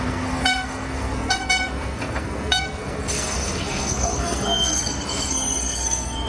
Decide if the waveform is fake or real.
fake